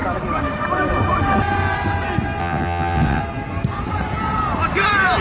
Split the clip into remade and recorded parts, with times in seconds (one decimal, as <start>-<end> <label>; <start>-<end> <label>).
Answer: 0.0-2.4 recorded; 2.4-3.2 remade; 3.2-5.2 recorded